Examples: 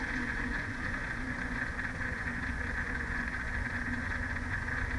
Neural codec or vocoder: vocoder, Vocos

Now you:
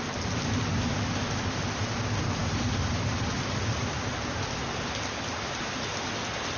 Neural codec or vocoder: none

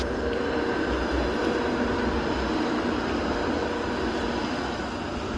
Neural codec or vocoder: none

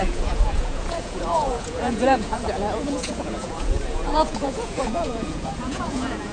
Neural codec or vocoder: vocoder, Vocos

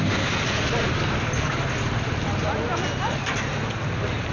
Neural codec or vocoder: none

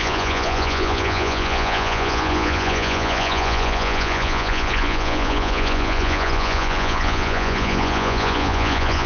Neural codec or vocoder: vocoder, Vocos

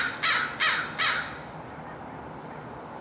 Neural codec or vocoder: none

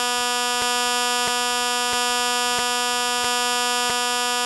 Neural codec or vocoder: none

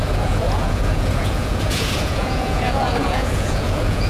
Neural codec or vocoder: vocoder, Vocos